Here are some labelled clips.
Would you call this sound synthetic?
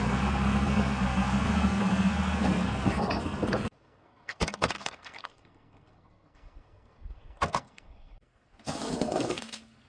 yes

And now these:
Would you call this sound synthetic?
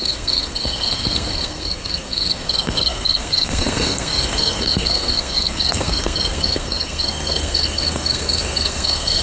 yes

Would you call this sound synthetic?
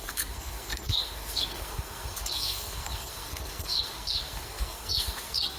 yes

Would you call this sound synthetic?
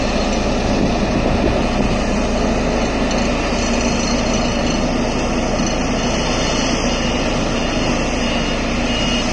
no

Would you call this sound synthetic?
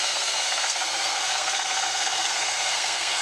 yes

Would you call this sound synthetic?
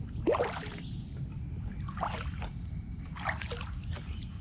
no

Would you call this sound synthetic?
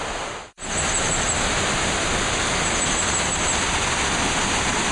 no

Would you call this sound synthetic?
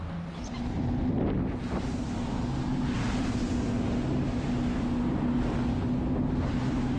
no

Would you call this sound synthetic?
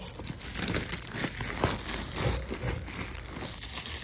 no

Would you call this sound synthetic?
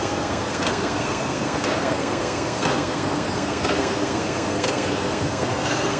yes